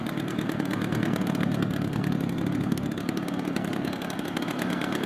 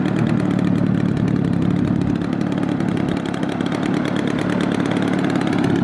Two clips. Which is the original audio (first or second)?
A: second